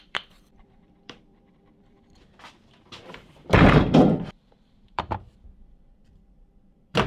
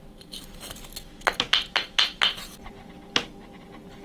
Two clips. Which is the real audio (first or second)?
second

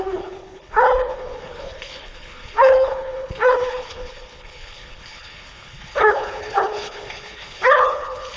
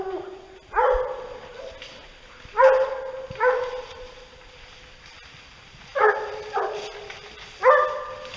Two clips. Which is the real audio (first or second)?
second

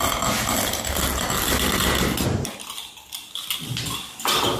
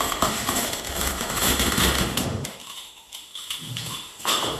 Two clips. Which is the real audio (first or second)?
first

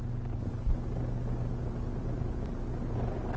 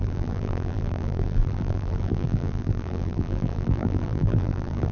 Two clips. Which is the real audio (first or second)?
first